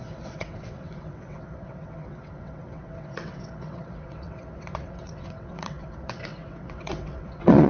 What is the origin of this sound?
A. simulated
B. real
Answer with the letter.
A